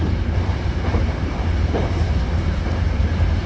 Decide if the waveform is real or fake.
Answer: fake